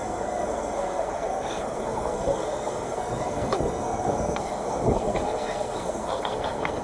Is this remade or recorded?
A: remade